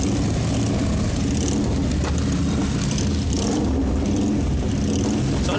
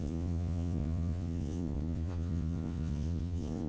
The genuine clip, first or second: first